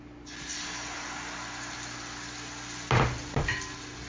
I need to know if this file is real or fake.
real